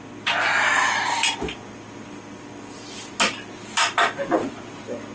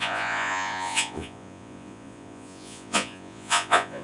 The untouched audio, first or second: first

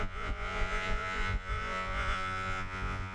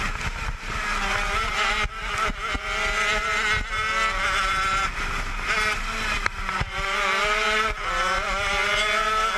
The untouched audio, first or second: second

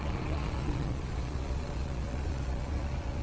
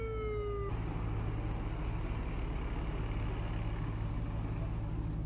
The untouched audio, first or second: second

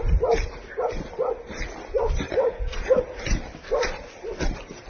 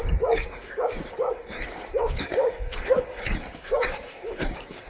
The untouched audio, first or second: first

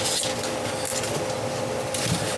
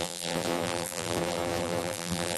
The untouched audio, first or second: first